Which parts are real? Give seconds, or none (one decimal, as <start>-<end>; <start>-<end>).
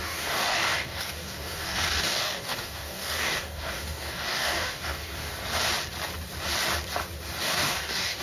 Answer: 5.3-7.4